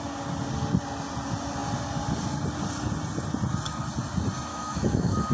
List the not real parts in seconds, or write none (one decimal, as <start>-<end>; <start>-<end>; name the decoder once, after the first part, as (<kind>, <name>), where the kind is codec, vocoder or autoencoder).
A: 4.5-5.3 (autoencoder, DAC-VAE)